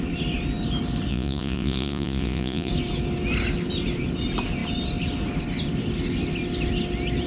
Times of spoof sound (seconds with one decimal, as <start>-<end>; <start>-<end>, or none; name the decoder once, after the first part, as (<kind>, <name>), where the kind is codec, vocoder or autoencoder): 1.1-2.7 (vocoder, Vocos)